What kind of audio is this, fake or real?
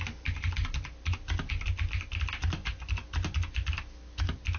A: real